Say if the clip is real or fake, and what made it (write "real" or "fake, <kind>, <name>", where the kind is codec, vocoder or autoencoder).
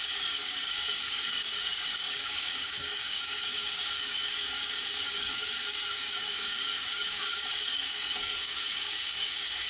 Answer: fake, codec, DAC